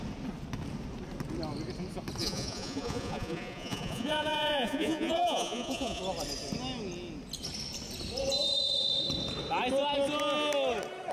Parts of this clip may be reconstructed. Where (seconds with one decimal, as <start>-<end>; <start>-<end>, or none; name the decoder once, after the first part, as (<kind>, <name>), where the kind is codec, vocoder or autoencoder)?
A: 2.2-6.0 (vocoder, Vocos)

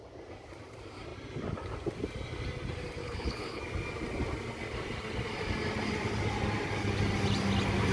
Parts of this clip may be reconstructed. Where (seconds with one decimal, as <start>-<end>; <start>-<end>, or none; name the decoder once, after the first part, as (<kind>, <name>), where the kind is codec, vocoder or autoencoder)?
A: 3.0-3.6 (codec, HILCodec)

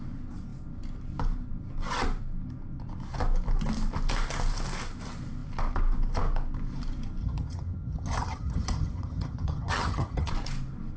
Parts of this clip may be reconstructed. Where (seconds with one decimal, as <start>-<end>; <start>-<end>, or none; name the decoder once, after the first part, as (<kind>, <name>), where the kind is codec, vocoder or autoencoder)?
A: 7.2-10.3 (vocoder, HiFi-GAN)